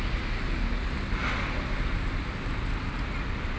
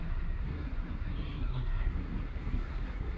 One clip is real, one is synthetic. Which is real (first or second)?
first